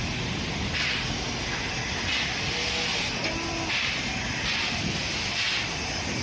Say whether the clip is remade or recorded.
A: recorded